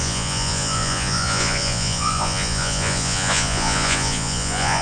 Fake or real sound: fake